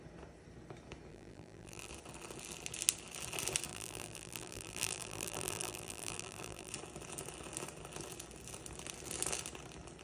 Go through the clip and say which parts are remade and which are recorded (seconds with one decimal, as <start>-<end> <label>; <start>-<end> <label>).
0.0-1.1 recorded; 1.1-1.9 remade; 1.9-3.7 recorded; 3.7-6.7 remade; 6.7-10.0 recorded